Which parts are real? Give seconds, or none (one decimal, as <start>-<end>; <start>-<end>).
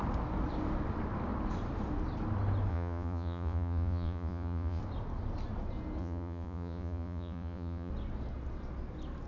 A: 0.0-2.7; 4.8-6.0; 7.9-9.3